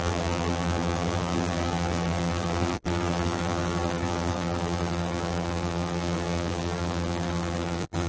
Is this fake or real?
fake